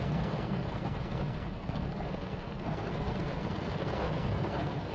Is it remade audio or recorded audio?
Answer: remade